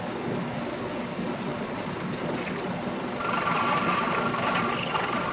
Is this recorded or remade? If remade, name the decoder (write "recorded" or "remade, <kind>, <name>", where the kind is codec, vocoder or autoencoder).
recorded